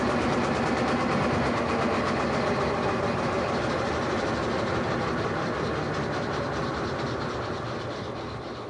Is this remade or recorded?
recorded